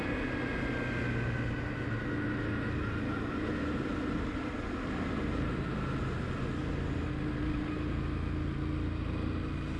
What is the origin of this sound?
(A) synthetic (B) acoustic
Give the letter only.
B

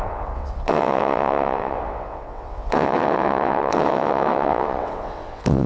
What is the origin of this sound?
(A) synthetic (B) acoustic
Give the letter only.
A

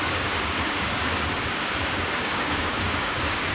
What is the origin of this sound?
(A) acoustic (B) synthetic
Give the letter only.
B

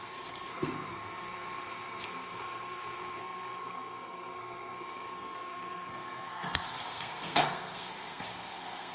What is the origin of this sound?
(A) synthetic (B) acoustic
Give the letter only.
A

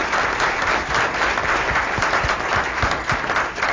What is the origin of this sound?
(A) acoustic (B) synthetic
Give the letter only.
A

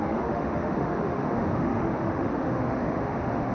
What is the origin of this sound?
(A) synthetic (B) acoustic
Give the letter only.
A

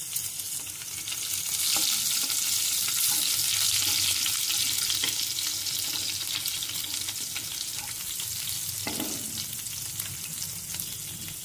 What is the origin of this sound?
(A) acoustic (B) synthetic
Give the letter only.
A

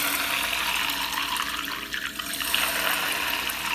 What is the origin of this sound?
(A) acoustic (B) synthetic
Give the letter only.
A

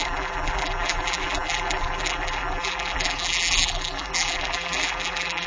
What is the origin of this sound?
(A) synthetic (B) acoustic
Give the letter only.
A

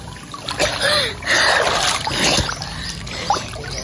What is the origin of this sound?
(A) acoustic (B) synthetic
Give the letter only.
A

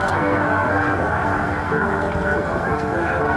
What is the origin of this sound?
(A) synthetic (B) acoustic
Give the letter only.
A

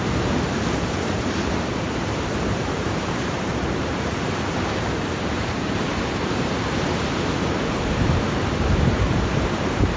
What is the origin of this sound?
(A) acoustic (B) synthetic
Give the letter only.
B